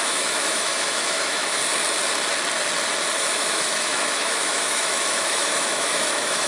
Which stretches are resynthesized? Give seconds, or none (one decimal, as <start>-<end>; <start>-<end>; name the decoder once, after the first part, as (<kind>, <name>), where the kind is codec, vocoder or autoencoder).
0.0-1.6 (autoencoder, DAC-VAE); 3.2-6.5

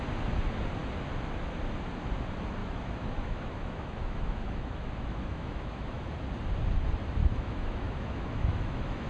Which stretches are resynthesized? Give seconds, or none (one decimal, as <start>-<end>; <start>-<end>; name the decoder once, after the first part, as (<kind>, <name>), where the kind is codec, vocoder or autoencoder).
2.6-6.1 (autoencoder, DAC-VAE); 7.2-9.1